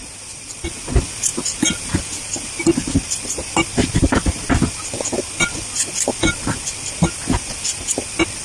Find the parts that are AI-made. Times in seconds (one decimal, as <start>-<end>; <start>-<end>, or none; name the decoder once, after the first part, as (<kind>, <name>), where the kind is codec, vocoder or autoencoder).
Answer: none